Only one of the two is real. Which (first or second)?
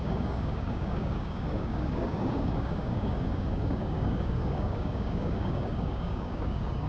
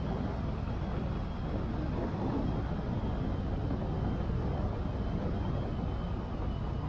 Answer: second